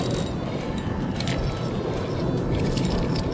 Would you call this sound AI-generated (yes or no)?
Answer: no